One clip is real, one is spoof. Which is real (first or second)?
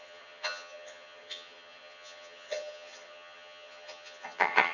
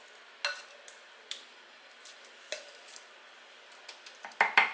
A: second